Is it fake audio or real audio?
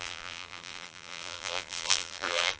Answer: fake